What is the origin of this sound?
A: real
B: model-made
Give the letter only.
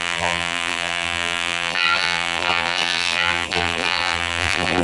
B